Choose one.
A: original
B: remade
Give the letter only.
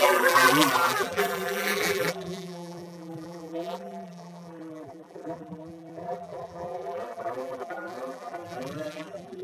B